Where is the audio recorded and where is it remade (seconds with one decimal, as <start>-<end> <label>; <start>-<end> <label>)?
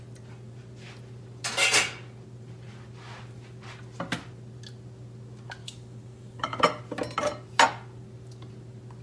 0.0-5.6 recorded; 5.6-6.8 remade; 6.8-9.0 recorded